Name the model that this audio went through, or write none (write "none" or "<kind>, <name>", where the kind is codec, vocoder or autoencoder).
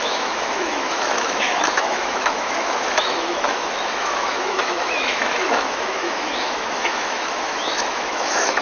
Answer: autoencoder, DAC-VAE